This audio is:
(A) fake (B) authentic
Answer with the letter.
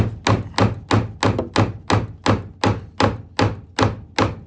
B